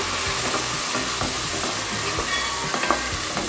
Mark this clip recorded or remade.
recorded